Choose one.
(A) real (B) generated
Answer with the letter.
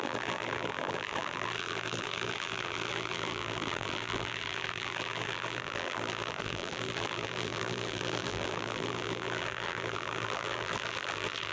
B